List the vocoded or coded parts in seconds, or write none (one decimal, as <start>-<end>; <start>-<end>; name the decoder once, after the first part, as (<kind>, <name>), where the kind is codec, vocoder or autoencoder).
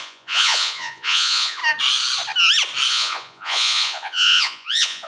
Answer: 0.0-1.6 (vocoder, Vocos); 2.9-5.1